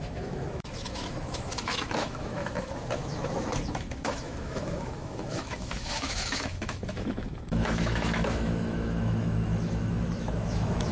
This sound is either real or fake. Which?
fake